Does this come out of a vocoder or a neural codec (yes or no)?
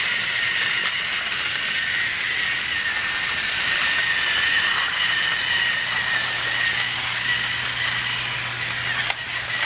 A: no